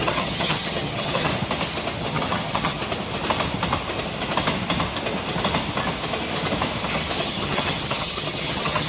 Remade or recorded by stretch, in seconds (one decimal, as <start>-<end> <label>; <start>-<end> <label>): 0.0-1.3 remade; 1.3-2.0 recorded; 2.0-2.8 remade; 2.8-7.2 recorded; 7.2-8.9 remade